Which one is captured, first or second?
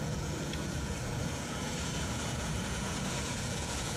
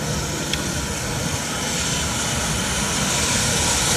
second